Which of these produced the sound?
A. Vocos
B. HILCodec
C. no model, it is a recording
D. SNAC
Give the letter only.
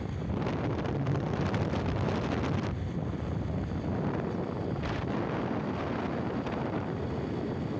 C